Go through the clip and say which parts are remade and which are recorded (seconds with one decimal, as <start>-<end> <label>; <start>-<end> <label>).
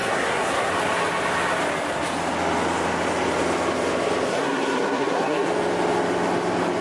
0.0-0.7 remade; 0.7-4.3 recorded; 4.3-5.5 remade; 5.5-6.8 recorded